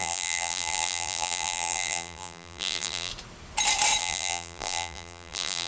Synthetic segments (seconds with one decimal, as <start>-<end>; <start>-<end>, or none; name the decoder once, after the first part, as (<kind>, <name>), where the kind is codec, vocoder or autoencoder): 0.0-3.1 (vocoder, BigVGAN v2); 4.0-5.7